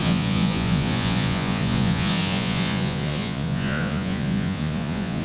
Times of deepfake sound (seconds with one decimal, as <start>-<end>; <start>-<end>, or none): 0.0-5.2